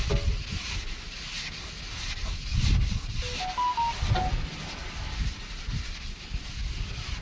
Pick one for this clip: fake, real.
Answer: real